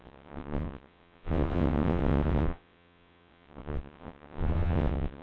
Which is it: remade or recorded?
remade